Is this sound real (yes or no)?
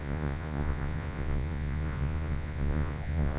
no